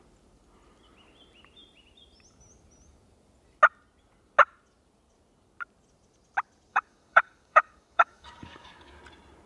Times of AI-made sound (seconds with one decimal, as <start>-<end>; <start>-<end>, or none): 6.7-9.0

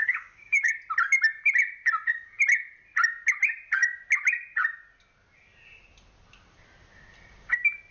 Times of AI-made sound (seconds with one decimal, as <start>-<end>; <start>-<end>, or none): 0.0-0.7

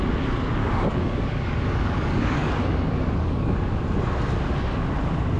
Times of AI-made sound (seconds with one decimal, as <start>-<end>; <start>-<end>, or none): 0.6-3.8

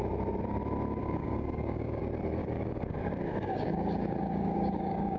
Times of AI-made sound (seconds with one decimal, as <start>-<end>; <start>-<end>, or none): 1.0-2.0; 2.4-5.2